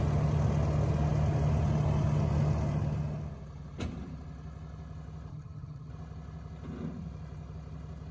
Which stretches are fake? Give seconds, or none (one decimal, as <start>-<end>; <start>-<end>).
5.3-5.9